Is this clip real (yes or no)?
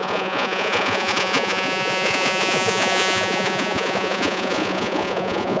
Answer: no